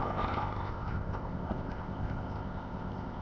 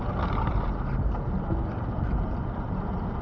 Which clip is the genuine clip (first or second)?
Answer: second